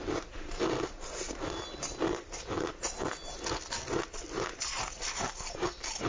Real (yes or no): yes